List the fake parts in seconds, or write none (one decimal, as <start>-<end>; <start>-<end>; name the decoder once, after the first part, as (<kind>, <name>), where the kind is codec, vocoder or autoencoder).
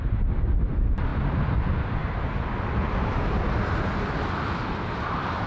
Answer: none